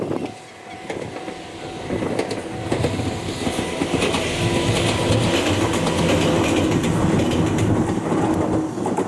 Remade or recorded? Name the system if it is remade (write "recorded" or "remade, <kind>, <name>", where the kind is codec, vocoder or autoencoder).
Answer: recorded